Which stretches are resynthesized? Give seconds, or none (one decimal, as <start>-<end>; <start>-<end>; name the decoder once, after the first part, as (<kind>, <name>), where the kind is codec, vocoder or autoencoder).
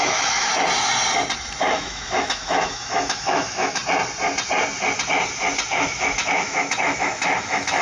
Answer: 0.0-0.5 (autoencoder, DAC-VAE); 1.6-3.8; 5.7-7.8